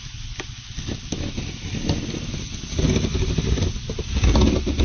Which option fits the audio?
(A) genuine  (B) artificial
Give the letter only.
A